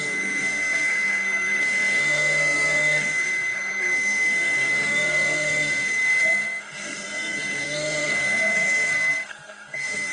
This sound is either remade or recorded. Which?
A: remade